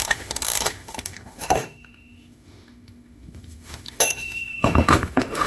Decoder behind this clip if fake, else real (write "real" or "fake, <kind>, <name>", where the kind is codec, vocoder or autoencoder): fake, autoencoder, DAC-VAE